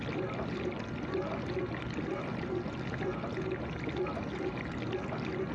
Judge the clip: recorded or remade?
recorded